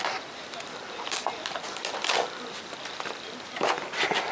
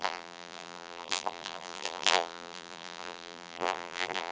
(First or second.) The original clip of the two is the first